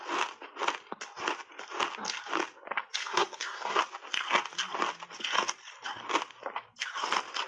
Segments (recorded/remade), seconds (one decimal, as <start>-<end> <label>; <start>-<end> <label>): 0.0-3.0 recorded; 3.0-3.8 remade; 3.8-7.5 recorded